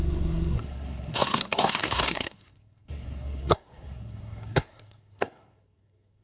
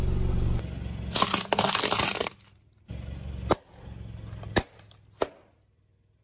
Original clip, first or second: second